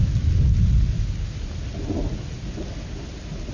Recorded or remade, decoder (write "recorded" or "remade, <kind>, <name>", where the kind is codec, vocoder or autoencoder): recorded